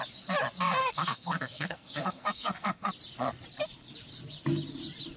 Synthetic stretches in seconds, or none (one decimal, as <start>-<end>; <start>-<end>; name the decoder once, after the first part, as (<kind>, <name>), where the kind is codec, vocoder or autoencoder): 0.8-2.9 (codec, SNAC)